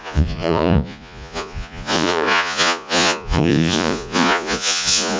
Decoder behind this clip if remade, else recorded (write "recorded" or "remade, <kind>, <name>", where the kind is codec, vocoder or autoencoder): remade, vocoder, Vocos